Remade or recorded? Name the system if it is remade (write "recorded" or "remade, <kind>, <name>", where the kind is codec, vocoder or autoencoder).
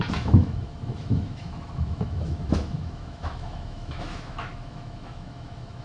remade, autoencoder, DAC-VAE